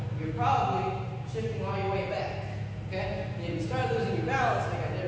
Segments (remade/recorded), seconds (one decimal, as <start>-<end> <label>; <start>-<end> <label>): 0.0-5.1 recorded